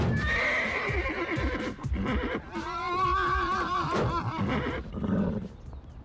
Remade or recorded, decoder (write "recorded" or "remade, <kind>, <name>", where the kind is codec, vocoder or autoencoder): recorded